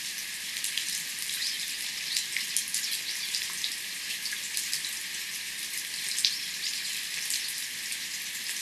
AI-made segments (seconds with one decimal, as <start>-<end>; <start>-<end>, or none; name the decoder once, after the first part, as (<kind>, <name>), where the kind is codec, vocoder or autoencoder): 0.0-1.9 (vocoder, BigVGAN v2); 2.8-8.6